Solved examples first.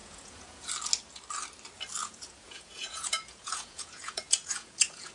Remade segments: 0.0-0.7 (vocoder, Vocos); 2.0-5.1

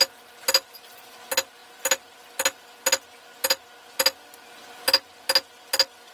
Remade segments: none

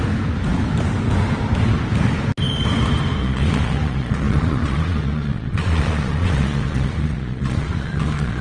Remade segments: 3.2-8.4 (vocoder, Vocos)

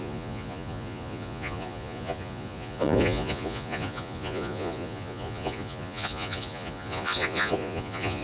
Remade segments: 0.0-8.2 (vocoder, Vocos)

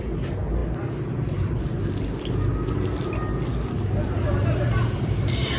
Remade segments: none

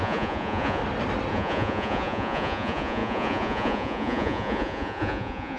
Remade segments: 0.0-0.8 (vocoder, Vocos); 1.3-5.6

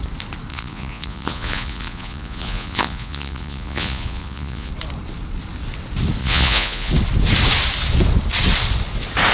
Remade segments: 0.5-4.7 (vocoder, Vocos); 6.2-6.9